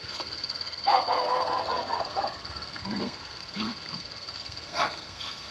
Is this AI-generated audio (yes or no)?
yes